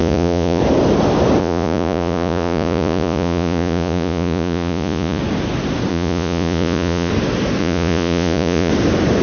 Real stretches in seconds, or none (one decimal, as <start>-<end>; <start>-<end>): 0.6-1.4; 5.2-5.9; 7.1-7.6; 8.7-9.2